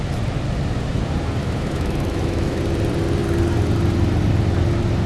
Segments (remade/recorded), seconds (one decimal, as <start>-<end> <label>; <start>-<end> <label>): 0.0-1.4 recorded; 1.4-2.6 remade; 2.6-5.1 recorded